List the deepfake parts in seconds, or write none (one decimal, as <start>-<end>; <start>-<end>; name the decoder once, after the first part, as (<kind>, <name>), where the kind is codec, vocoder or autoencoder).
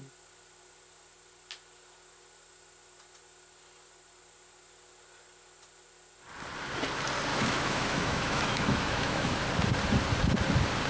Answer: 7.3-9.3 (autoencoder, DAC-VAE)